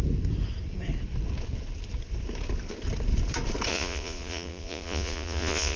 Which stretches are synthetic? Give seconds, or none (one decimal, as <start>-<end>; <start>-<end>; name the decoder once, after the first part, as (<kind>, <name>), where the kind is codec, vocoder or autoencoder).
3.7-5.8 (vocoder, Vocos)